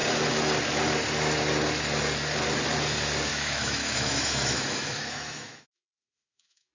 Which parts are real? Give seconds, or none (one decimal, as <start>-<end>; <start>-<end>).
0.0-3.3